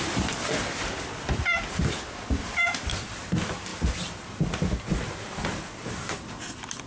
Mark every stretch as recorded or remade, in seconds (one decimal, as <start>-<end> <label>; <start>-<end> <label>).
0.0-6.9 recorded

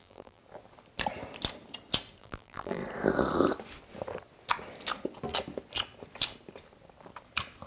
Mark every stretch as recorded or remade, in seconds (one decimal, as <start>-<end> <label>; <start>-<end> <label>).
0.0-0.4 remade; 0.4-2.2 recorded; 2.2-2.8 remade; 2.8-7.7 recorded

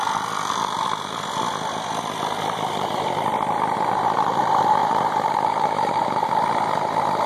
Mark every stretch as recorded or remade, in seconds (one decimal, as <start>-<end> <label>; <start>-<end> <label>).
0.0-4.8 recorded; 4.8-6.3 remade; 6.3-7.3 recorded

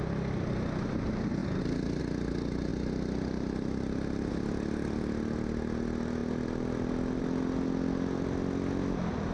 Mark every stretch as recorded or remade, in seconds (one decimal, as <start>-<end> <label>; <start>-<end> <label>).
0.0-9.3 recorded

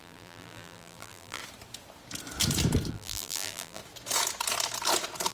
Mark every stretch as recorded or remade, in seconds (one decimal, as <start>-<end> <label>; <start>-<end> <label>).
0.0-1.4 remade; 1.4-2.9 recorded; 2.9-3.8 remade; 3.8-5.3 recorded

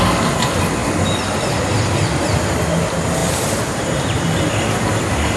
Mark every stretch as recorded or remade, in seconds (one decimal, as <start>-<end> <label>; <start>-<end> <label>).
0.0-3.2 recorded; 3.2-4.4 remade; 4.4-5.4 recorded